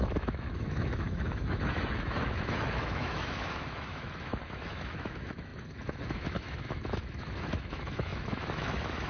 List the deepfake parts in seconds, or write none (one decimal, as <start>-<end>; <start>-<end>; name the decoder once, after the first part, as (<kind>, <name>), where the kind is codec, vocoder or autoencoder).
0.0-9.1 (autoencoder, DAC-VAE)